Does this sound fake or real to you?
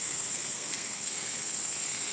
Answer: fake